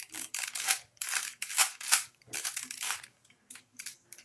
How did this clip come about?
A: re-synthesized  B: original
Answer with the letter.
A